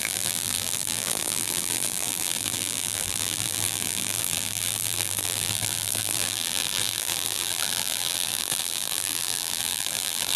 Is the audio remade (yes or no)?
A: yes